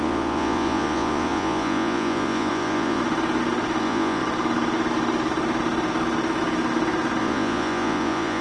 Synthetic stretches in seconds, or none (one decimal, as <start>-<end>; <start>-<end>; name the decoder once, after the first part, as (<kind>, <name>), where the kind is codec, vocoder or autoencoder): 0.0-3.0 (vocoder, Vocos); 3.8-4.2; 7.2-8.4